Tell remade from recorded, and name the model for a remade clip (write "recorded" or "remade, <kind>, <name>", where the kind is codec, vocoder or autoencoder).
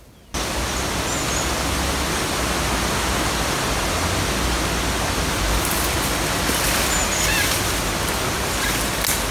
recorded